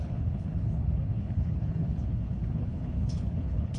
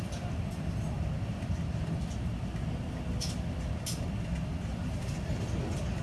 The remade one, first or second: first